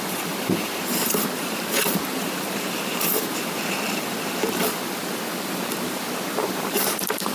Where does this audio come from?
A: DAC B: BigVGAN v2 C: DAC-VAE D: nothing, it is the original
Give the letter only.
B